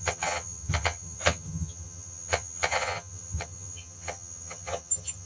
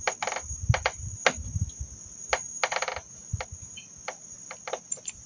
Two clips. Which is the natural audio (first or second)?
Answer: second